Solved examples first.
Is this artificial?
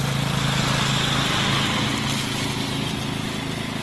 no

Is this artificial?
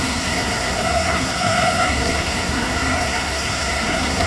yes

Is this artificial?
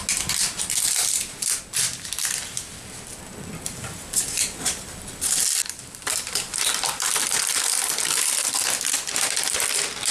no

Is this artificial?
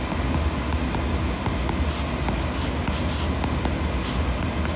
no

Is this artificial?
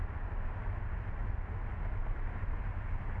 no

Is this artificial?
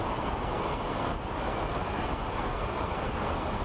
yes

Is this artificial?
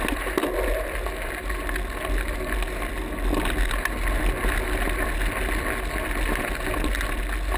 no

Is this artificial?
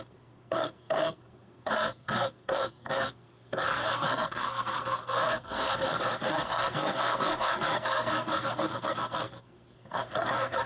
yes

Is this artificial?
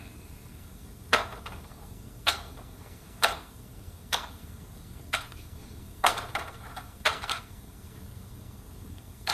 yes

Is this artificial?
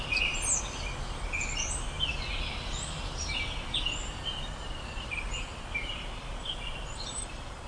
no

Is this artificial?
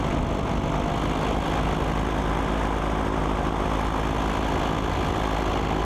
no